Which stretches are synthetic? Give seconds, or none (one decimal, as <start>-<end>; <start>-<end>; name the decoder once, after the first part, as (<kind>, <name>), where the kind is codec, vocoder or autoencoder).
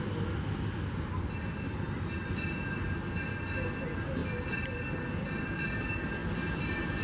none